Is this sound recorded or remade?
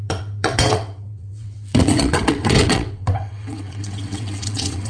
remade